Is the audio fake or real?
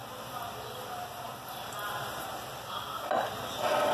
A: real